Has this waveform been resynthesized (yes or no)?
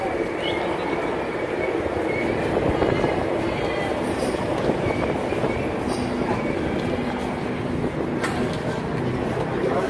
no